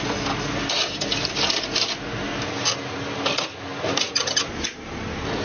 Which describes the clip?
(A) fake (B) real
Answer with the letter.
B